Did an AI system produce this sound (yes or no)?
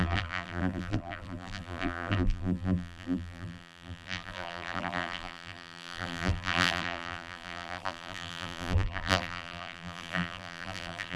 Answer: yes